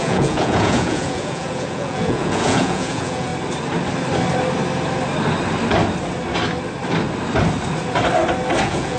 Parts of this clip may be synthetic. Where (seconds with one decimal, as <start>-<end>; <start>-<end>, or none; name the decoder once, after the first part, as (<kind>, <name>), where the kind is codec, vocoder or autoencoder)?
0.0-3.3 (vocoder, Vocos); 8.6-9.0